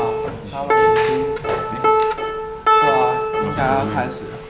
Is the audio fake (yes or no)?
no